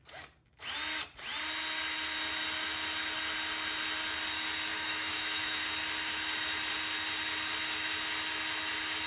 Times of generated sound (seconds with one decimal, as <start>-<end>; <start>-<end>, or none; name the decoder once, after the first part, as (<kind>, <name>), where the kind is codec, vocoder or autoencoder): 4.7-5.6 (autoencoder, DAC-VAE)